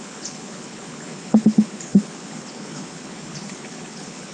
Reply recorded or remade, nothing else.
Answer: remade